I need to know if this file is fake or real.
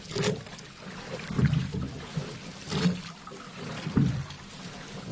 real